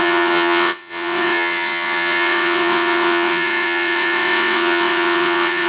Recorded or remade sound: remade